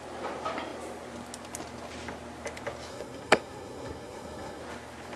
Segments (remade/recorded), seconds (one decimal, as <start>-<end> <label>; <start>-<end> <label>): 0.0-2.9 recorded; 2.9-4.6 remade; 4.6-5.2 recorded